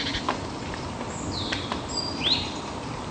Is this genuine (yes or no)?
yes